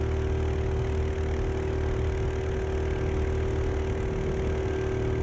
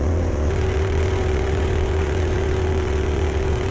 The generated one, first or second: second